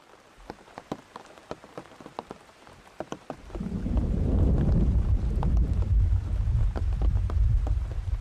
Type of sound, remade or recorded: remade